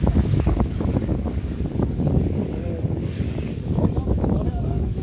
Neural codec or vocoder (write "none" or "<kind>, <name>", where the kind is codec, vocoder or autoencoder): codec, DAC